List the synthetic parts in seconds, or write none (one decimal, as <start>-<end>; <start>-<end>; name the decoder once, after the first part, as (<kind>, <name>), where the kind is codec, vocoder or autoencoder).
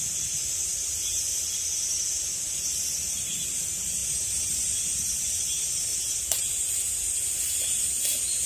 0.7-1.4 (vocoder, BigVGAN v2); 4.0-5.4; 5.9-7.4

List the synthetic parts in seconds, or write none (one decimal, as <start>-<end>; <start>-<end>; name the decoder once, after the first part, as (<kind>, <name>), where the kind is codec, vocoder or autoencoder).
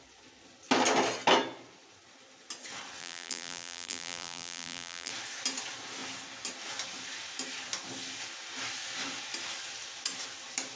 3.0-5.1 (vocoder, BigVGAN v2)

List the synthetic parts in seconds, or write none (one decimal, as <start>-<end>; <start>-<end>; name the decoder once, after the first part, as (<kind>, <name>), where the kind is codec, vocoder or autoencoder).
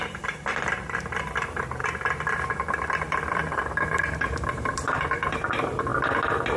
0.0-1.8 (vocoder, BigVGAN v2); 2.5-5.9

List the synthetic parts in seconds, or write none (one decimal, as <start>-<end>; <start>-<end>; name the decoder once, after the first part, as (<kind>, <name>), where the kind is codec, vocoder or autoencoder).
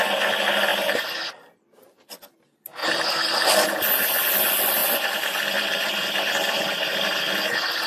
0.7-2.2 (vocoder, BigVGAN v2); 2.8-3.5; 4.8-6.7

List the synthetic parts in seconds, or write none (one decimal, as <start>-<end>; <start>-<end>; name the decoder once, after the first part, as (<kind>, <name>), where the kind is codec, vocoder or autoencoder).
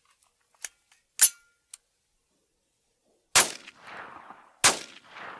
none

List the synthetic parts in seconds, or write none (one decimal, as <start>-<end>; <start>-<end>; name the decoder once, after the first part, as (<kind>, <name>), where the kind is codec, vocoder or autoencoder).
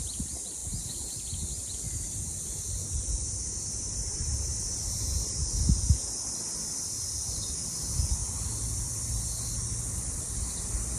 4.1-5.5 (vocoder, BigVGAN v2)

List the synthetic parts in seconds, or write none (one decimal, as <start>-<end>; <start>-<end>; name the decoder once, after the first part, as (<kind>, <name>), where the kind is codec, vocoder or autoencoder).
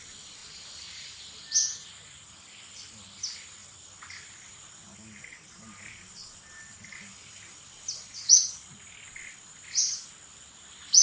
0.4-1.2 (vocoder, BigVGAN v2)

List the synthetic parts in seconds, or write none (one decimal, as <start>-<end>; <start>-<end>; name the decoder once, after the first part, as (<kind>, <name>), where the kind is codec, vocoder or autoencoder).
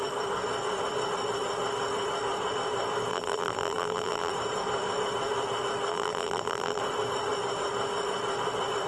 3.1-4.3 (vocoder, BigVGAN v2); 5.9-6.8